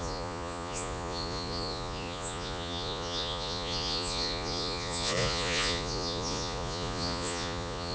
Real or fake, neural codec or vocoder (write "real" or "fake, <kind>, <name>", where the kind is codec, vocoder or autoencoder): fake, vocoder, Vocos